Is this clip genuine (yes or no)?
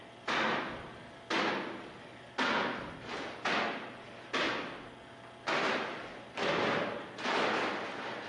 yes